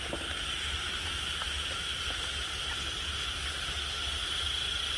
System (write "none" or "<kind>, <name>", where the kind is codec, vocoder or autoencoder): none